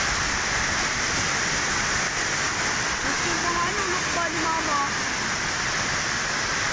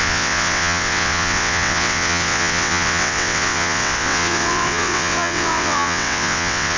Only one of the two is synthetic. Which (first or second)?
second